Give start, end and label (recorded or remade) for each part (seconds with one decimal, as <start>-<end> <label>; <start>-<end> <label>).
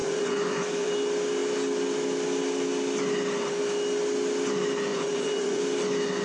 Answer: 0.0-0.9 remade; 0.9-4.9 recorded; 4.9-5.6 remade; 5.6-6.2 recorded